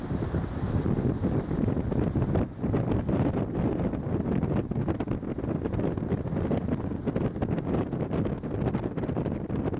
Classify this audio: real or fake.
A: real